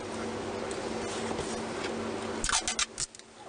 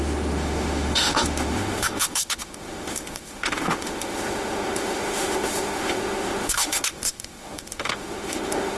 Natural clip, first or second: first